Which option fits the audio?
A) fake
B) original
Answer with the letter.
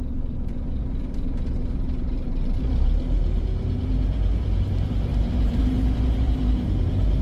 A